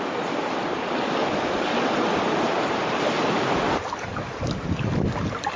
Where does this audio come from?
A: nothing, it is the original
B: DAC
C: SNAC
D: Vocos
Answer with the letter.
A